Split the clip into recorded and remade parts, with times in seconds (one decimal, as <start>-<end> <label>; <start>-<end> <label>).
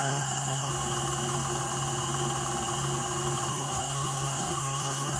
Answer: 0.0-0.7 remade; 0.7-3.5 recorded; 3.5-5.2 remade